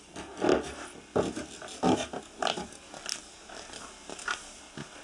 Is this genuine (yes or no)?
yes